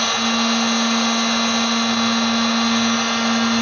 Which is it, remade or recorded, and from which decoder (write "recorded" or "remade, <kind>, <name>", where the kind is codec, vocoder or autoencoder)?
recorded